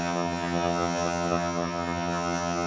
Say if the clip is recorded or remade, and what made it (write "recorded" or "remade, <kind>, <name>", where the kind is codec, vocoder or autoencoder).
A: remade, vocoder, HiFi-GAN